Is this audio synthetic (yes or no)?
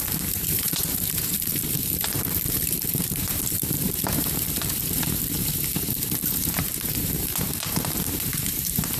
yes